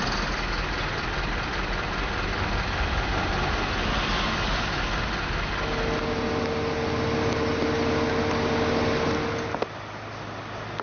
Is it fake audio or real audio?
real